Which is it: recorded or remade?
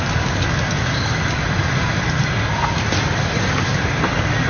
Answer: recorded